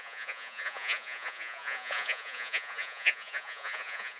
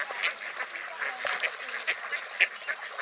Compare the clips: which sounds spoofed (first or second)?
first